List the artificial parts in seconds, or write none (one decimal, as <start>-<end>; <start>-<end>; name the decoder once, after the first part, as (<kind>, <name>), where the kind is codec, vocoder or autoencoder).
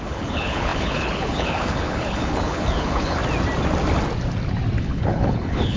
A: 0.0-3.2 (codec, HILCodec); 4.8-5.8